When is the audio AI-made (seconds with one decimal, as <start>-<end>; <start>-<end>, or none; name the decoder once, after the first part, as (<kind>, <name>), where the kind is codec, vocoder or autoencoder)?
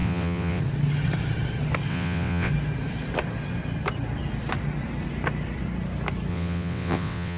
0.0-0.6 (vocoder, WaveNeXt); 1.9-2.5; 6.3-7.4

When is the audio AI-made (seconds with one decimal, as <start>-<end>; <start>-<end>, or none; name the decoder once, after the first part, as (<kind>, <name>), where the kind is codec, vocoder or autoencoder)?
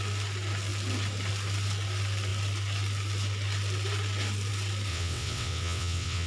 4.9-6.3 (vocoder, WaveNeXt)